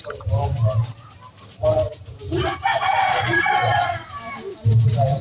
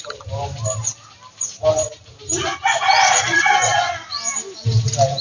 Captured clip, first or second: second